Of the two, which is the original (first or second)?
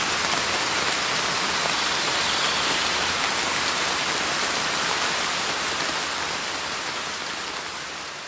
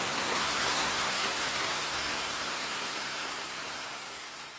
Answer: first